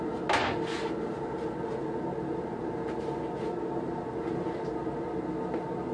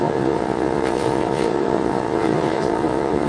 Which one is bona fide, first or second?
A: first